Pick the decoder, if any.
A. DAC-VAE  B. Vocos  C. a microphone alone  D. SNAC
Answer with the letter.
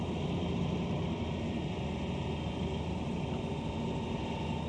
C